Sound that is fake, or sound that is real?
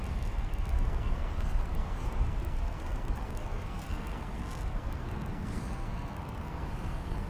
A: fake